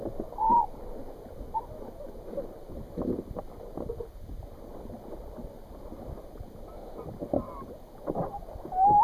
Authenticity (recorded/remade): recorded